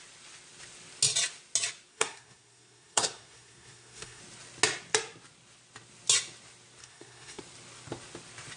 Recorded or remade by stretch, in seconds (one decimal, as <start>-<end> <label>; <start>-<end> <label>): 0.0-1.9 recorded; 1.9-4.2 remade; 4.2-6.8 recorded; 6.8-7.4 remade; 7.4-8.6 recorded